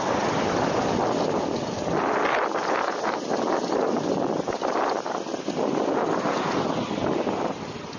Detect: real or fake real